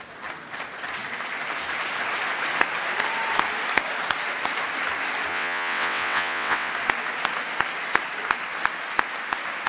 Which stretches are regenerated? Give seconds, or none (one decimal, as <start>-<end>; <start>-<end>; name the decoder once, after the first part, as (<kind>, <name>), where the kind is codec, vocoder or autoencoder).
5.3-6.7 (vocoder, WaveNeXt)